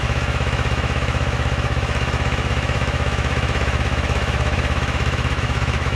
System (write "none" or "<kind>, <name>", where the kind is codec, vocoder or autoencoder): autoencoder, DAC-VAE